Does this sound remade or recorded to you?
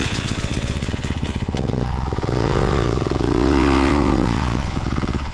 remade